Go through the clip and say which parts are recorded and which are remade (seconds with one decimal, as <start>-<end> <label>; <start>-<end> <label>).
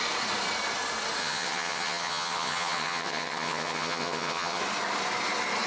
0.0-1.2 recorded; 1.2-4.6 remade; 4.6-5.7 recorded